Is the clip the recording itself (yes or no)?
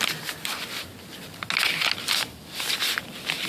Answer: yes